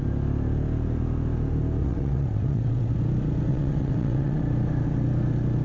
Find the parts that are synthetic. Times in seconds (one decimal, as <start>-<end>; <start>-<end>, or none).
1.8-2.9; 3.5-4.4